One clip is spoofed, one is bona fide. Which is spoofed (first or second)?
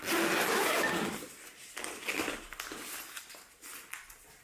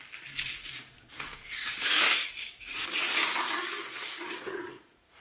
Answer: second